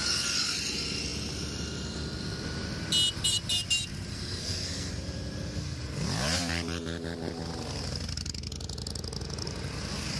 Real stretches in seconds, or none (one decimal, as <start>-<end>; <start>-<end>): 0.0-4.1; 4.9-10.2